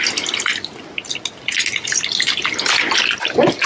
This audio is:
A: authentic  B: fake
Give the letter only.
A